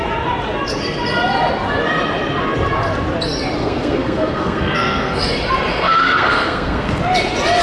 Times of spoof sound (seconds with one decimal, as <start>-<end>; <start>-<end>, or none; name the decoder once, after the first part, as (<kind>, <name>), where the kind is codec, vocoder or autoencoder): 3.6-5.2 (codec, SNAC); 5.7-7.0